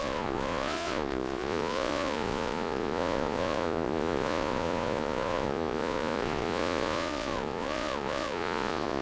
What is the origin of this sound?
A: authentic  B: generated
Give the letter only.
B